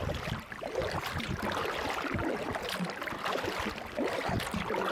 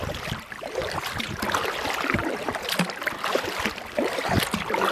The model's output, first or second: second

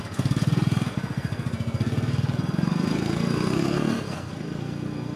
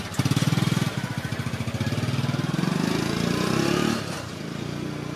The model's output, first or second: first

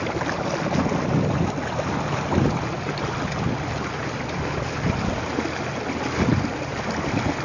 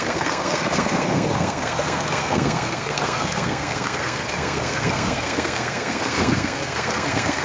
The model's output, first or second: second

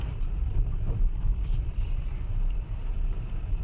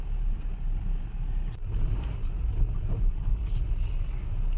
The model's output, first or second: first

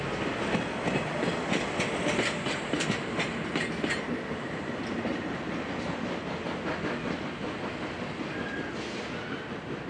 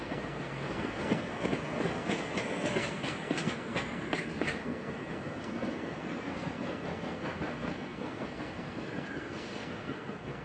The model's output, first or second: second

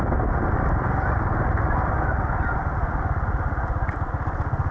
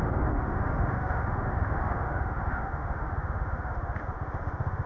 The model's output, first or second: second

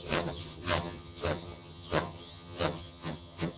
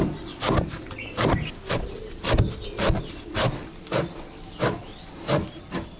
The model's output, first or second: first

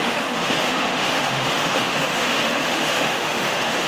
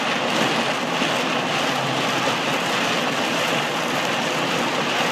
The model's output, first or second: first